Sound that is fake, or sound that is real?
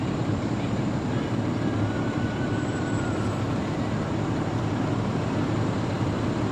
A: fake